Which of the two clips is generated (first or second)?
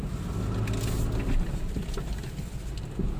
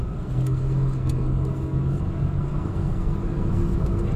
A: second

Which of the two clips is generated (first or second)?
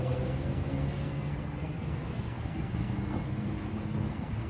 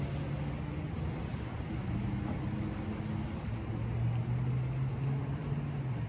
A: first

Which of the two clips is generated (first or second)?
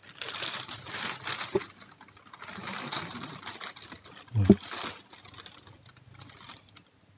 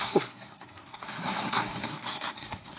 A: second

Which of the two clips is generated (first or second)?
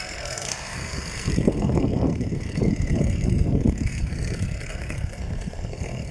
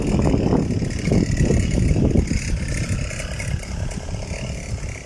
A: first